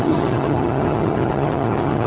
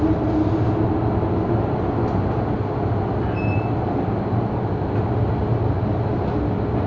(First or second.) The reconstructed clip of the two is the first